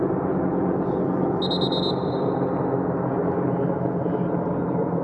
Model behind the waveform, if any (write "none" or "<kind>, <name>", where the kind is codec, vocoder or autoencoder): none